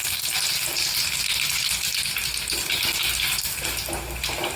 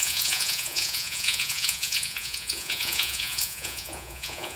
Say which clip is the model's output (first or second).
second